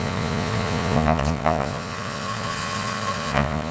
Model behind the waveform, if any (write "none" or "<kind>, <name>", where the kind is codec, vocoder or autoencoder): vocoder, Vocos